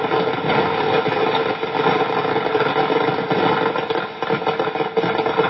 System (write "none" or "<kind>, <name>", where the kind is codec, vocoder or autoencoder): none